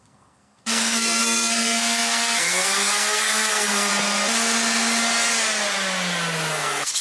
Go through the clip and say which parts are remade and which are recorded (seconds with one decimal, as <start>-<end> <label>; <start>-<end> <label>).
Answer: 0.0-3.9 remade; 3.9-6.5 recorded; 6.5-7.0 remade